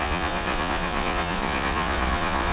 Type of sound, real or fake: fake